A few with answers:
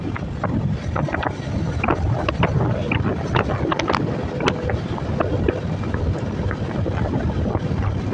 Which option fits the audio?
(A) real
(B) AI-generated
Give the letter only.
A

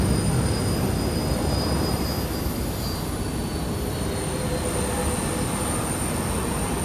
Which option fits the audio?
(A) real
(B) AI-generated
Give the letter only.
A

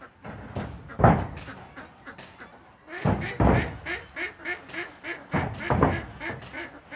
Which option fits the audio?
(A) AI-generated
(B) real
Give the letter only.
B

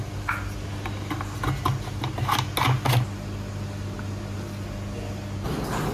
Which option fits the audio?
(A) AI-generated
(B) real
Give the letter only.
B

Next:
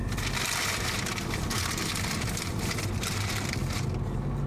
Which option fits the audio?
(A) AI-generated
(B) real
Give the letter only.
B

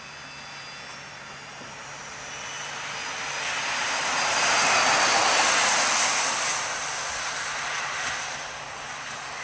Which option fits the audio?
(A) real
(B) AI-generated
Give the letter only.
A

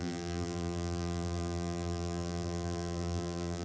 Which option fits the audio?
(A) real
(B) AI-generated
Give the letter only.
B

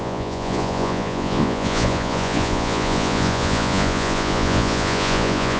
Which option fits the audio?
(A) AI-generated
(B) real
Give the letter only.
A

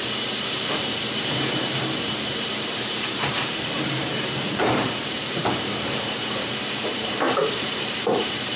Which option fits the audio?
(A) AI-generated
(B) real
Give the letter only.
A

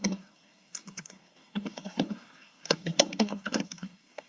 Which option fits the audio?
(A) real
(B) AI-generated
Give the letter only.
B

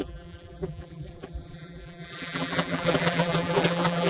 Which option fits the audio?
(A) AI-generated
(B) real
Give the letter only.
A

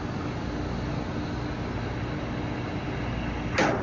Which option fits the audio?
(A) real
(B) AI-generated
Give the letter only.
A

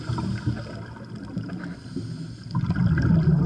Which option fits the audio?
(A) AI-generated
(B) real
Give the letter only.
B